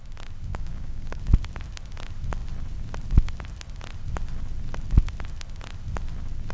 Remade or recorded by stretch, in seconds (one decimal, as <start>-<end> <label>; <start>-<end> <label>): 0.0-0.5 recorded; 0.5-1.2 remade; 1.2-6.5 recorded